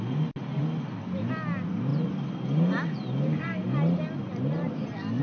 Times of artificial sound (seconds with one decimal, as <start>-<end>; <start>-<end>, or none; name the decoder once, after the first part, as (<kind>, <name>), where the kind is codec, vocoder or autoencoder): none